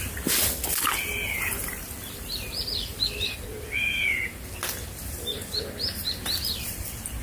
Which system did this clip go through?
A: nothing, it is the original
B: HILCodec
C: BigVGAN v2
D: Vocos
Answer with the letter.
C